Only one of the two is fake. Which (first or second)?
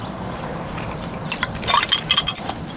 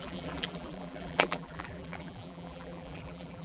second